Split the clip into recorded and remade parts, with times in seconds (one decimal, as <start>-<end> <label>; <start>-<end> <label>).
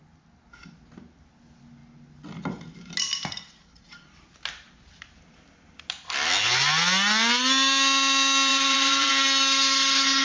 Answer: 0.0-8.5 recorded; 8.5-9.1 remade; 9.1-10.2 recorded